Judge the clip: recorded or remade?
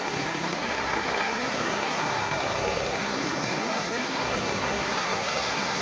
remade